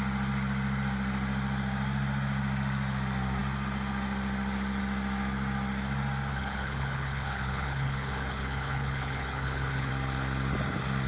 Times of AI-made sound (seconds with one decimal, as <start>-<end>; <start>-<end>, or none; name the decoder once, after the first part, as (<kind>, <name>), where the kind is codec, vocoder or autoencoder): 6.3-9.9 (codec, HILCodec)